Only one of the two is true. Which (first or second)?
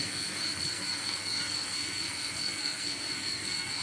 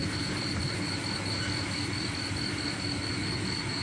second